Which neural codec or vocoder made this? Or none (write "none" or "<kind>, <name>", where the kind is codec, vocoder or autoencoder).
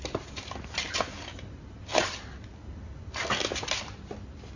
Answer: none